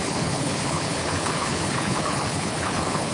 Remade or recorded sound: remade